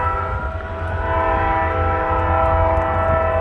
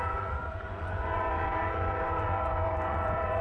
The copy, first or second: second